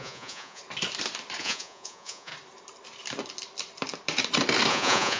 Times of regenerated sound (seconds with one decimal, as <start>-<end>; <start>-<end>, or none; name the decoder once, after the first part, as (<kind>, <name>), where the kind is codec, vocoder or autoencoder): 0.0-0.6 (vocoder, Vocos); 1.4-2.3; 4.7-5.2